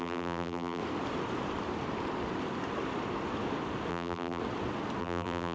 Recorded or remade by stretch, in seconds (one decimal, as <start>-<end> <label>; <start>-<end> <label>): 0.0-0.8 remade; 0.8-3.9 recorded; 3.9-4.4 remade; 4.4-5.0 recorded; 5.0-5.5 remade